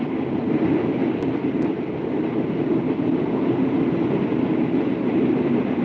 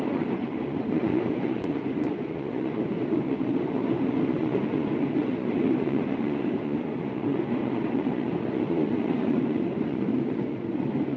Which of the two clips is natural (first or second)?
first